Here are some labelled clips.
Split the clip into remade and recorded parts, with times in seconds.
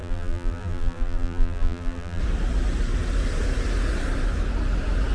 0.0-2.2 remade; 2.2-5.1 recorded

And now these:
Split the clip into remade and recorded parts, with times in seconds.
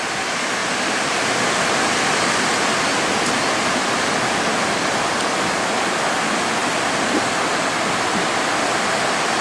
0.0-9.4 recorded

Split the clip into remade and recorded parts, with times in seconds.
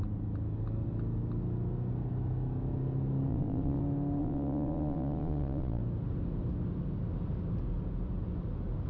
0.0-3.3 recorded; 3.3-3.8 remade; 3.8-4.2 recorded; 4.2-5.8 remade; 5.8-8.9 recorded